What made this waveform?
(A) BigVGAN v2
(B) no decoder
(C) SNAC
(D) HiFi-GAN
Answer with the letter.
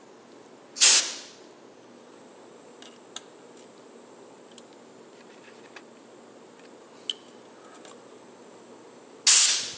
B